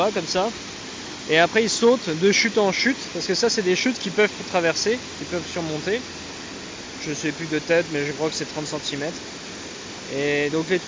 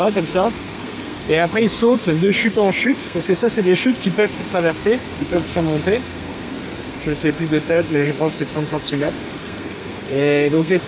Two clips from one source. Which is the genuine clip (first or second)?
first